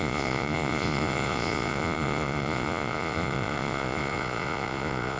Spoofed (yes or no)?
yes